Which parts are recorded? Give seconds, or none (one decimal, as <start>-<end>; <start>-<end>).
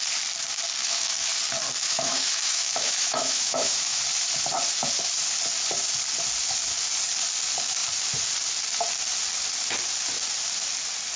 0.0-0.8; 1.3-1.8; 4.0-11.2